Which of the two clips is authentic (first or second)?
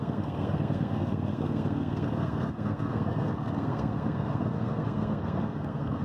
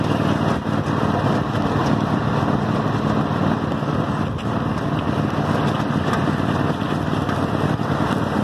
second